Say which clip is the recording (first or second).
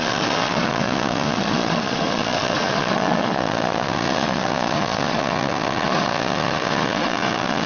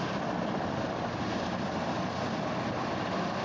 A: second